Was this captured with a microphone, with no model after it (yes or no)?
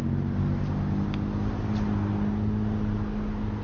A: yes